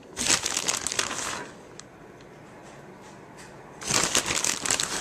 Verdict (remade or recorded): recorded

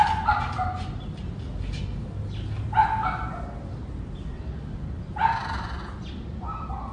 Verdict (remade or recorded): recorded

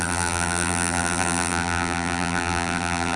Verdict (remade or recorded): remade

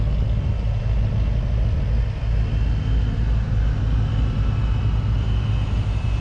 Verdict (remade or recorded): recorded